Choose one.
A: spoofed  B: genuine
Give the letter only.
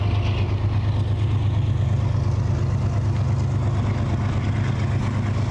B